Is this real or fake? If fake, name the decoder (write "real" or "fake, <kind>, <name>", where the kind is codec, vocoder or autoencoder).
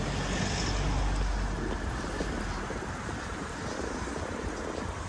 real